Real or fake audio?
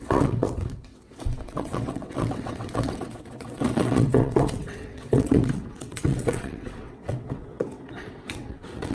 fake